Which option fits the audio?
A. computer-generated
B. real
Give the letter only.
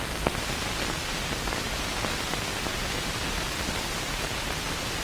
A